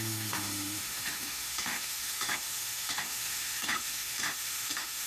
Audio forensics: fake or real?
fake